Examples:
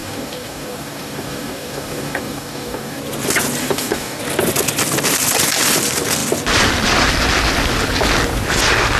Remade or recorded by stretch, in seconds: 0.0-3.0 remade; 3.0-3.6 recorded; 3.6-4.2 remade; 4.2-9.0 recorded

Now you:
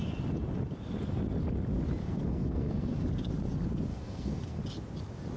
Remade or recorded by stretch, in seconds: 0.0-2.0 recorded; 2.0-2.9 remade; 2.9-3.9 recorded; 3.9-4.6 remade; 4.6-5.4 recorded

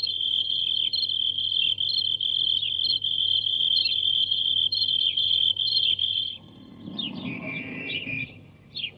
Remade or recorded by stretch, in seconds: 0.0-0.6 remade; 0.6-2.9 recorded; 2.9-9.0 remade

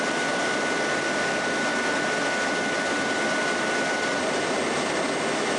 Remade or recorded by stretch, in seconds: 0.0-5.6 recorded

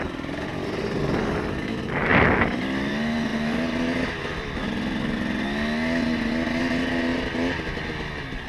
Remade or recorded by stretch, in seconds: 0.0-0.5 recorded; 0.5-1.0 remade; 1.0-2.1 recorded; 2.1-2.9 remade; 2.9-8.5 recorded